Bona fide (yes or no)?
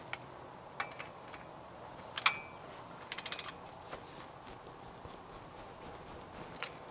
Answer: yes